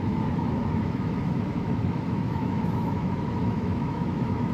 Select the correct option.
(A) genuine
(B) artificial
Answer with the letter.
B